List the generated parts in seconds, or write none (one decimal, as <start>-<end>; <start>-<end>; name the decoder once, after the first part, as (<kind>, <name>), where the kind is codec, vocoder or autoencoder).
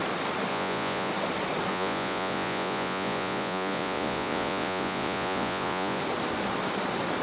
0.5-1.1 (vocoder, Vocos); 1.7-6.0